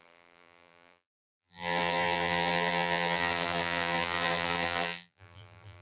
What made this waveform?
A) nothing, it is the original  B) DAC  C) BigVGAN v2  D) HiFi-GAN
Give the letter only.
C